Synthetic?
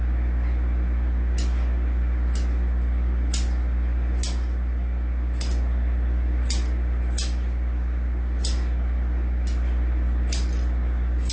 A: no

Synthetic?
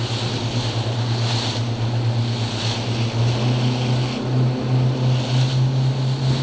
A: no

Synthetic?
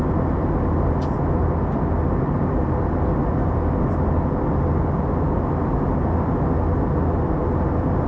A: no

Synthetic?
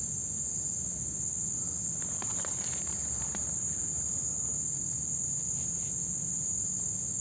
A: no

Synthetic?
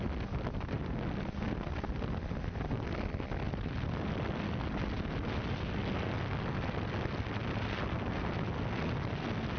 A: no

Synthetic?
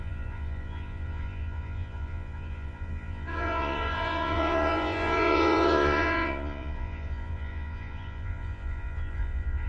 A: yes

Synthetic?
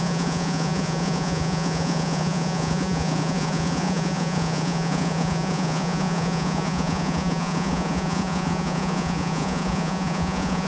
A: yes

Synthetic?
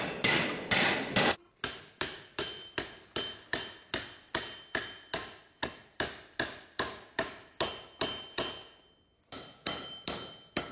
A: no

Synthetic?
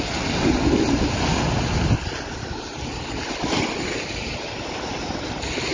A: no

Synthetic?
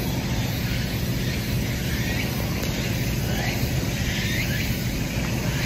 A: no